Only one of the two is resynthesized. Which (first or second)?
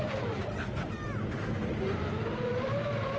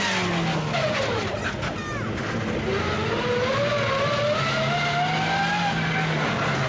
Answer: first